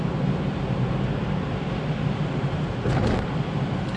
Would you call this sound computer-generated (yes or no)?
no